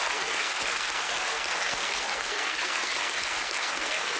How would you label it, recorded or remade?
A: remade